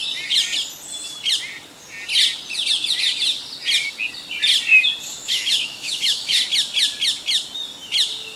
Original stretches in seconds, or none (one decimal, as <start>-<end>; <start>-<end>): 0.0-5.2; 6.4-8.4